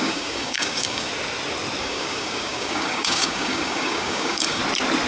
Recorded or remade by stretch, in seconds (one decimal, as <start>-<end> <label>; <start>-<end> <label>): 0.0-1.1 remade; 1.1-1.8 recorded; 1.8-4.6 remade; 4.6-5.1 recorded